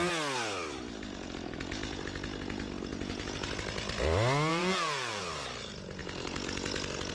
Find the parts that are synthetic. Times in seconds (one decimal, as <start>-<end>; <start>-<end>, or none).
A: 2.9-3.5; 4.5-5.2